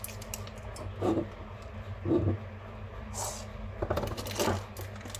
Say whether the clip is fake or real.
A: real